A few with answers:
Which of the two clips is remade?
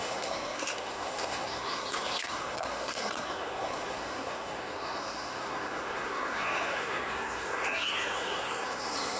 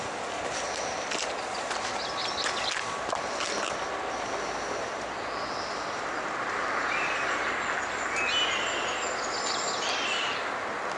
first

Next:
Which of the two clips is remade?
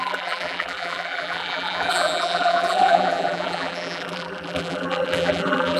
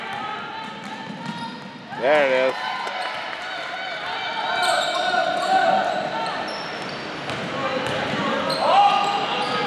first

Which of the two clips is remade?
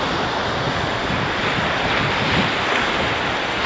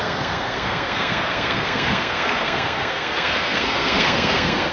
second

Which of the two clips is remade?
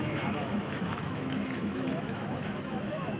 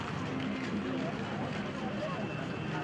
first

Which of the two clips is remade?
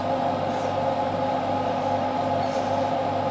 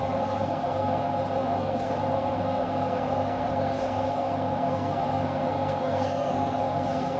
second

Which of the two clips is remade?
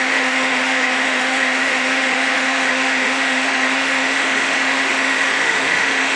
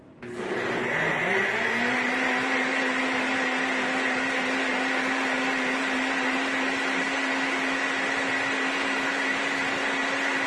first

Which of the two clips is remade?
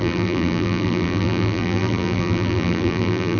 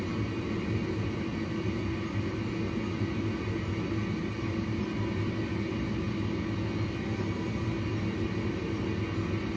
first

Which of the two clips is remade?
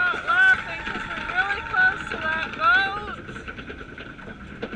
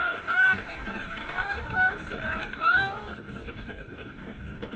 second